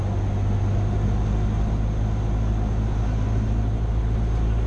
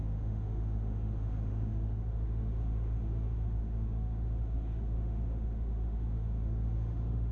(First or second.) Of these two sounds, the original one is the first